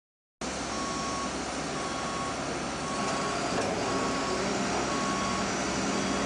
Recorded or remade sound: recorded